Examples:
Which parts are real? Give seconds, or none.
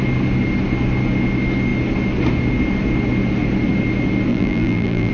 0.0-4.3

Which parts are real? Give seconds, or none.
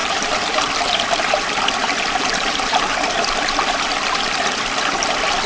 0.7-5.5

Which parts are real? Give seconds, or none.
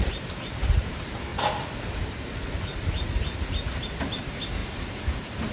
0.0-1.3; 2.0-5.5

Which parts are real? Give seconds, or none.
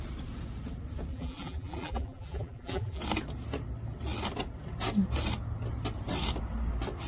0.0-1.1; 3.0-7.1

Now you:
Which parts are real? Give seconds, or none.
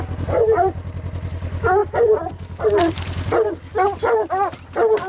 0.0-1.8; 3.3-5.1